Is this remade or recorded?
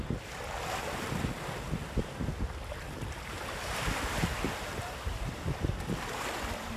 recorded